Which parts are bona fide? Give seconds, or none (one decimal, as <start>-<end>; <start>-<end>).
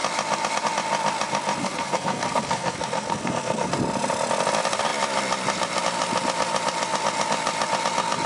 0.0-1.6; 3.7-8.3